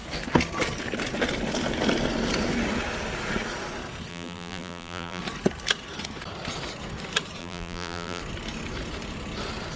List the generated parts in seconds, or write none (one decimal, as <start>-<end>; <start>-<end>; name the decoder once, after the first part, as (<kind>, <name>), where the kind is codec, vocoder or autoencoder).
4.1-5.2 (vocoder, BigVGAN v2); 7.4-8.2